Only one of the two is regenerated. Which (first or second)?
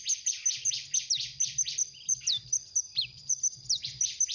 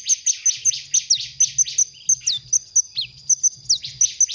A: first